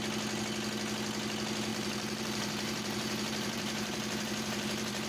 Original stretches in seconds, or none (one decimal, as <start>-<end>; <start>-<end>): 0.0-1.7